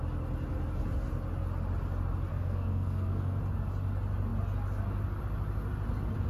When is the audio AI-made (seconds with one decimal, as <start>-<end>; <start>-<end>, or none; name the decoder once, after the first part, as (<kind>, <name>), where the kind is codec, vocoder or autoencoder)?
2.3-3.4 (codec, SNAC)